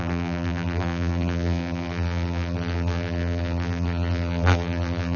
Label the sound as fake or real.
fake